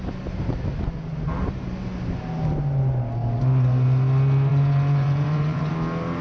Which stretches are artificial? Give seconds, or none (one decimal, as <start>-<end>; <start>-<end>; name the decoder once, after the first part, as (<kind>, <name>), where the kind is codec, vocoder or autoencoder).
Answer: 4.5-5.7 (vocoder, Vocos)